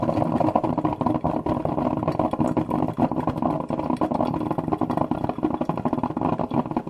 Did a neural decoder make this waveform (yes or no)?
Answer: yes